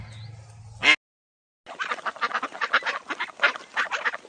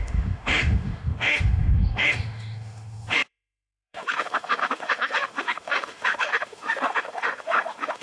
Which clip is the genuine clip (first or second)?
first